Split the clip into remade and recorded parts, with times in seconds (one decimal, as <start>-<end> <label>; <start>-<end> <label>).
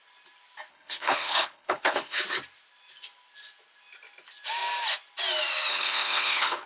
0.0-0.7 recorded; 0.7-2.2 remade; 2.2-5.7 recorded; 5.7-6.7 remade